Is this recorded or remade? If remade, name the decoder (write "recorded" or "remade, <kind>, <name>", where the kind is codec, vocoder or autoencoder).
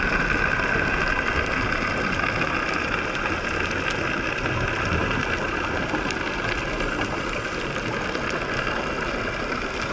recorded